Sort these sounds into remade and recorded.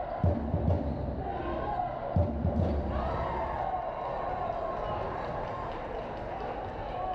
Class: recorded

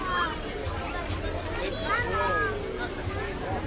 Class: recorded